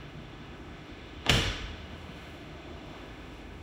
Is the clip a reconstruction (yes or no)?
yes